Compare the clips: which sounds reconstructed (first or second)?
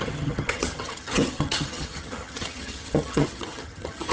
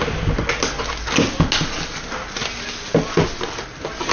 first